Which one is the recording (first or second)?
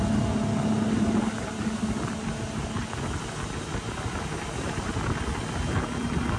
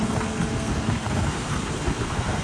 first